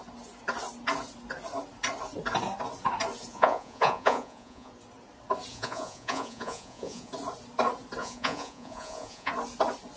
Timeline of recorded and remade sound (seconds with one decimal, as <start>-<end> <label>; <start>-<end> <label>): 0.0-3.3 recorded; 3.3-4.7 remade; 4.7-5.5 recorded; 5.5-7.1 remade; 7.1-8.0 recorded; 8.0-9.3 remade; 9.3-10.0 recorded